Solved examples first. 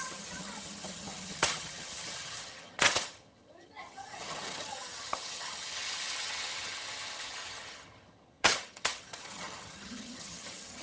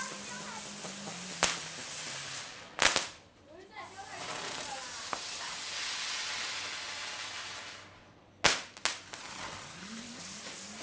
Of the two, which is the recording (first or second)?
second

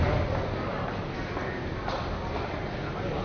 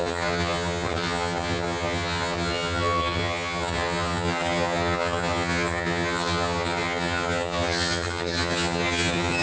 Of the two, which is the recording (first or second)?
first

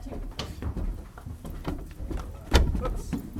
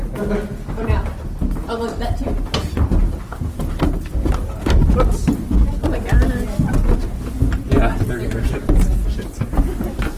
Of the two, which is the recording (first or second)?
second